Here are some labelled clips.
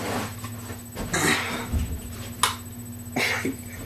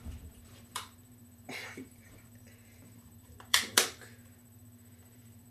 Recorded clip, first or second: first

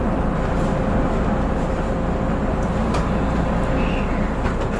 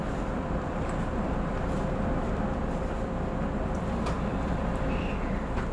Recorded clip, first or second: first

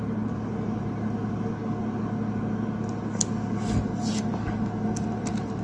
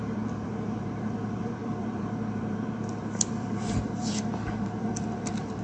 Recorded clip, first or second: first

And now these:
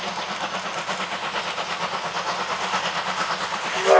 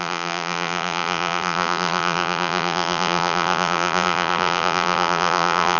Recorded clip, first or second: first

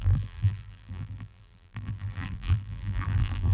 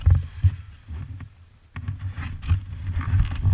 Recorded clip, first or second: second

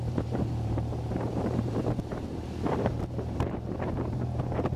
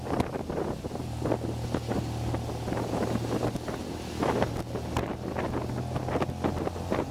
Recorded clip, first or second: second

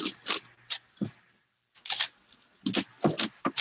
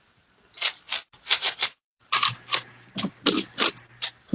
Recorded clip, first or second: first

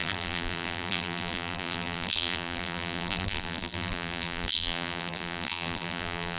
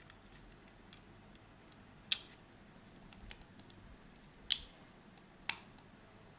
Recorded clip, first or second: second